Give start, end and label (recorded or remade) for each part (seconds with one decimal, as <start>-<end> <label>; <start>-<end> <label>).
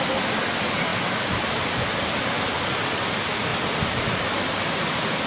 0.0-5.3 recorded